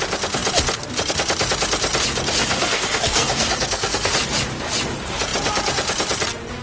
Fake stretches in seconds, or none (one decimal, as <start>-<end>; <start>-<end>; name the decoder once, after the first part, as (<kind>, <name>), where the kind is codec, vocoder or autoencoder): 2.4-4.1 (codec, SNAC)